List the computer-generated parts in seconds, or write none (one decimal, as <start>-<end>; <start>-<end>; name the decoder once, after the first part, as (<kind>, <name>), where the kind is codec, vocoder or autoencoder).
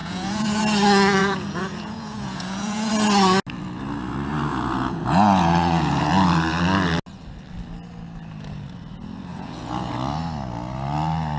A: 0.0-0.6 (vocoder, Vocos); 1.2-2.9; 4.5-6.1; 9.3-9.9